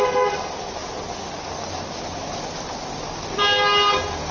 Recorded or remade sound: recorded